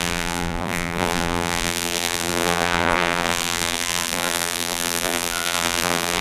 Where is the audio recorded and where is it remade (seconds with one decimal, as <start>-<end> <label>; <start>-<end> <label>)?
0.0-6.2 remade